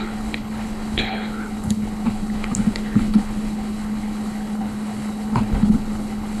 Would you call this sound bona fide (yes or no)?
no